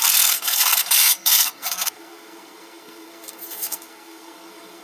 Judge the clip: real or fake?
fake